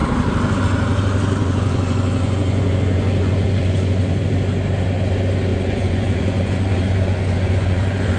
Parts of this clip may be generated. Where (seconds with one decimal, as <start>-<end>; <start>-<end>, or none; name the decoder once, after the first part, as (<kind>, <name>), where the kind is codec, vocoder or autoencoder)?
1.4-4.3 (vocoder, Vocos); 5.5-8.2